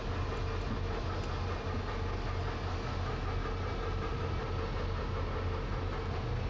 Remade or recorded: recorded